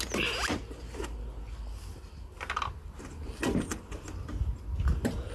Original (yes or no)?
yes